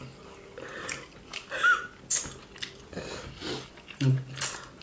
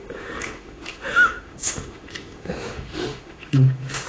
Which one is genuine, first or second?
first